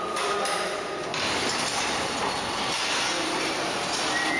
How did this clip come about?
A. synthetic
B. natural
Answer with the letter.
B